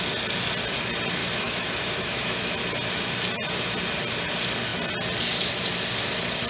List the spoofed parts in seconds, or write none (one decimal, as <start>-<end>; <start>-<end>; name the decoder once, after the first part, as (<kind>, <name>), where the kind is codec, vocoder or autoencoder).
1.2-2.5 (autoencoder, DAC-VAE)